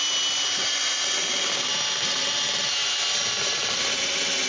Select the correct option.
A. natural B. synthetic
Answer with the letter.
B